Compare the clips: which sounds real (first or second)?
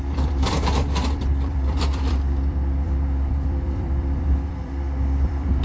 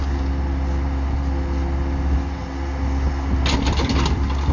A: second